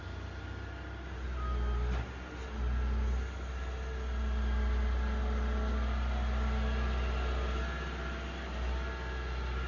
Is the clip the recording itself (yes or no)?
yes